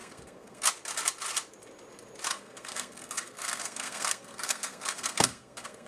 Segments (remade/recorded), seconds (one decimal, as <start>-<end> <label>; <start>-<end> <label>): 0.0-0.7 remade; 0.7-2.3 recorded; 2.3-5.9 remade